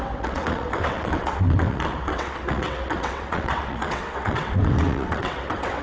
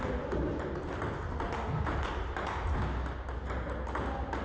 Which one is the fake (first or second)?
first